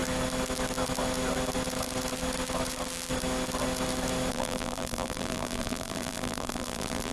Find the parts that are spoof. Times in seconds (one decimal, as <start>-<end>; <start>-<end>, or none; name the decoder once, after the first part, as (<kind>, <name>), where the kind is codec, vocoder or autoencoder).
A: 4.3-7.1 (vocoder, BigVGAN v2)